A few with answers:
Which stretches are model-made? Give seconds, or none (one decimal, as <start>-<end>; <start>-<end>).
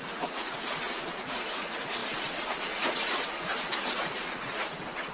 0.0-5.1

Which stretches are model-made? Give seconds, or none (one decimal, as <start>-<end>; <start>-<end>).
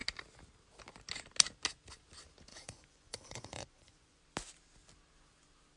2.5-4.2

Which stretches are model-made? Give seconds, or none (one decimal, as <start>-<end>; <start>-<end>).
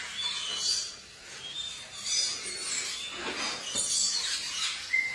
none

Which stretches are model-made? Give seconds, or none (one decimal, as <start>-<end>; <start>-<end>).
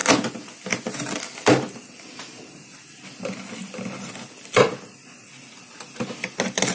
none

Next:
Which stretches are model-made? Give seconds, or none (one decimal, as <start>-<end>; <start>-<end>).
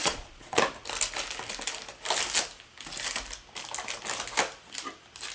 0.0-0.6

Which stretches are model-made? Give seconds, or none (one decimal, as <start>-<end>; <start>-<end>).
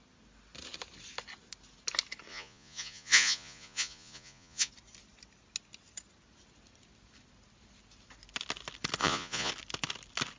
2.3-4.7; 9.0-9.5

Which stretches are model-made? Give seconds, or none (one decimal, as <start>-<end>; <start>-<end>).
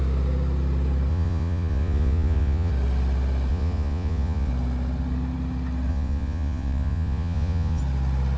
1.1-2.7; 3.5-4.5; 5.9-7.8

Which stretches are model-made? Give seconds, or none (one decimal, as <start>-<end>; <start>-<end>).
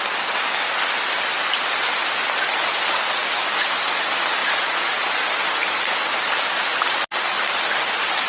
4.4-5.1